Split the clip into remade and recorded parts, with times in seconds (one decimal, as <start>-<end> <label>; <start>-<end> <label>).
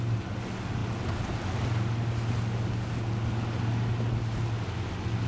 0.0-5.3 recorded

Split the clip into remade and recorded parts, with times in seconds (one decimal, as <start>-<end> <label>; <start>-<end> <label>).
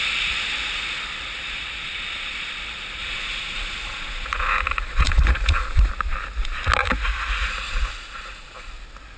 0.0-3.0 recorded; 3.0-5.9 remade; 5.9-6.8 recorded; 6.8-8.7 remade; 8.7-9.2 recorded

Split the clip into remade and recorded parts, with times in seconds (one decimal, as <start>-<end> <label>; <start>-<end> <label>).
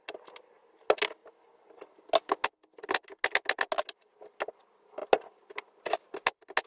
0.0-6.7 recorded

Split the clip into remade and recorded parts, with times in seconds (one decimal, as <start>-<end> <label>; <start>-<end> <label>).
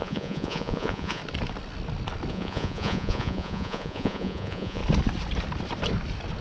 0.0-1.2 remade; 1.2-2.3 recorded; 2.3-4.8 remade; 4.8-6.4 recorded